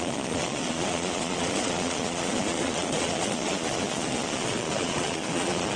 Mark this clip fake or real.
fake